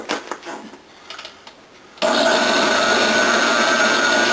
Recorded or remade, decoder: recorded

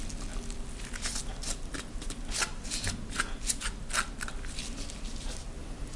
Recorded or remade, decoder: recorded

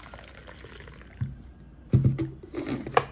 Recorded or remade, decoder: recorded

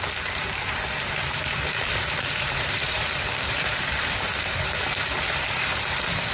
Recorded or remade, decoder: remade, vocoder, BigVGAN v2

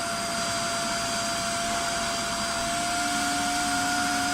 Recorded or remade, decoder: recorded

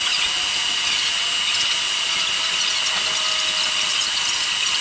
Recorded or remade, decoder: recorded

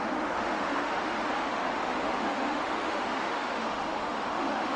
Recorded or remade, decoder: remade, autoencoder, DAC-VAE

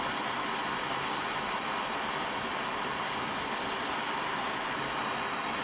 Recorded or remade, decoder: recorded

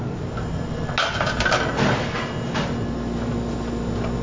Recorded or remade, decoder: recorded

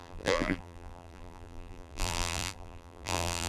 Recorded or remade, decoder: remade, vocoder, BigVGAN v2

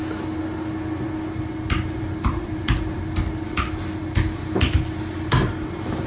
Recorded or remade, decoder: recorded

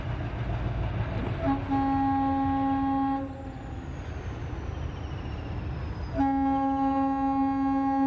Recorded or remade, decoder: recorded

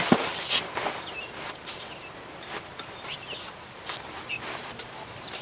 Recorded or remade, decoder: remade, vocoder, BigVGAN v2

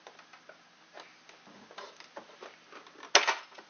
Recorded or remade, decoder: recorded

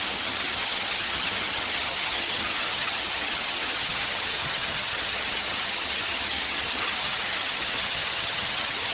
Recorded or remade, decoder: remade, vocoder, HiFi-GAN